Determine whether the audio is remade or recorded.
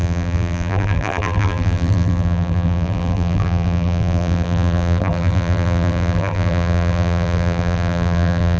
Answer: remade